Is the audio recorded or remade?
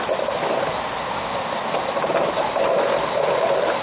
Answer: recorded